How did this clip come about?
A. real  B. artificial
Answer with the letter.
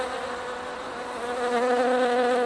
A